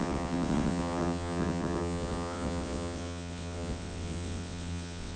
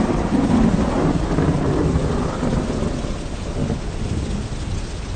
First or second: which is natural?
second